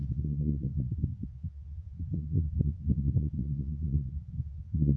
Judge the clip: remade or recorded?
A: remade